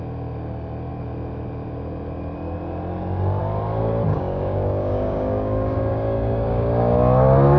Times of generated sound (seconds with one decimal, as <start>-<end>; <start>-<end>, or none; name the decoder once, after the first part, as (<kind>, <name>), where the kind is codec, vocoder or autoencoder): 4.1-7.6 (codec, DAC)